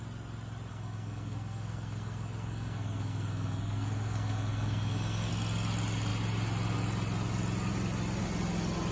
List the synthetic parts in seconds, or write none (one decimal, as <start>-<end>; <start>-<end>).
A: 0.7-5.3